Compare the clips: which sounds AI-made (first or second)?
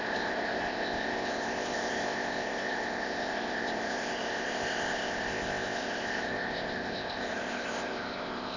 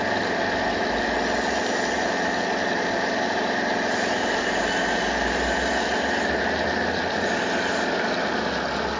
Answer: first